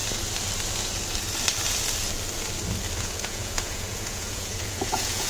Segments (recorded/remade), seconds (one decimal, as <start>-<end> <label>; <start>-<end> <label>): 0.0-3.0 recorded; 3.0-5.3 remade